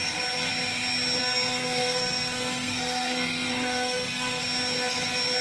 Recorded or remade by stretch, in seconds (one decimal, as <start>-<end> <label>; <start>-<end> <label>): 0.0-1.2 recorded; 1.2-4.4 remade; 4.4-5.4 recorded